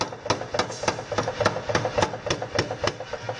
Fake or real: real